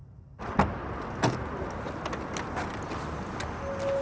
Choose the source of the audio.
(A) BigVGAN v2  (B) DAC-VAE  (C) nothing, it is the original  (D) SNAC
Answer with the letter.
C